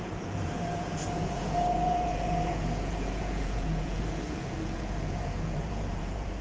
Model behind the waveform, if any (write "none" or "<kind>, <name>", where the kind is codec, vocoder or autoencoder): vocoder, Vocos